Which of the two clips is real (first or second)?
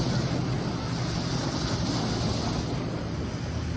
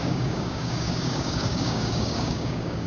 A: first